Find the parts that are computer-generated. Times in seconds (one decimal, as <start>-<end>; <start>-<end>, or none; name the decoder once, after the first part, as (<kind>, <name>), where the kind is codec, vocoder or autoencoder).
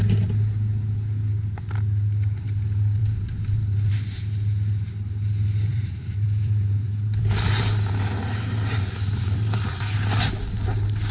3.0-3.9 (vocoder, BigVGAN v2); 5.7-9.8